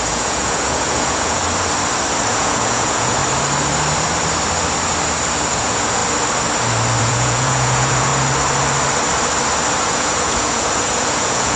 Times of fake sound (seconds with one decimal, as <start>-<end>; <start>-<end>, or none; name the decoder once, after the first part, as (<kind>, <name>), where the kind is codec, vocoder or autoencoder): 0.0-1.4 (vocoder, Vocos); 2.3-3.2; 5.6-6.0; 7.0-8.1; 9.8-11.6